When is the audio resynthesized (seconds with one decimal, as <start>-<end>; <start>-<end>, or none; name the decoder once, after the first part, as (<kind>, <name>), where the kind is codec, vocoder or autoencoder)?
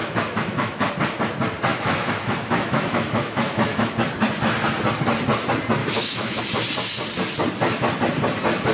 0.0-0.9 (autoencoder, DAC-VAE); 1.7-3.9; 5.8-6.4